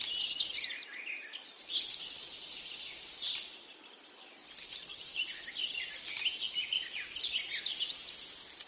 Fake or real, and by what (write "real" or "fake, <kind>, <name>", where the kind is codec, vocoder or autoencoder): real